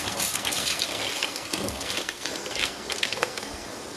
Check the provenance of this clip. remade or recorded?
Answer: remade